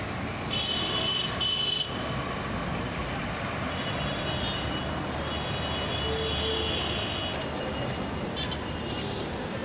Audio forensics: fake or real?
real